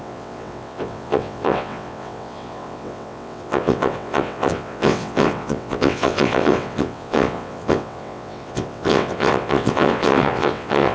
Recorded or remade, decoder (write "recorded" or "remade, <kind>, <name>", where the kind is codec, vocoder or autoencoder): remade, vocoder, WaveNeXt